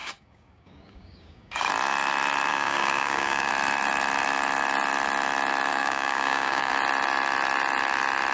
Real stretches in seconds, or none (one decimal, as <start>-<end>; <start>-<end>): 1.7-2.5; 3.5-5.7; 6.7-8.3